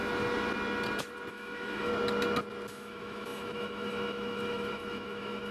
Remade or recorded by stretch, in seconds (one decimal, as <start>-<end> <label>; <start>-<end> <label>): 0.0-1.3 recorded; 1.3-1.9 remade; 1.9-2.7 recorded; 2.7-5.5 remade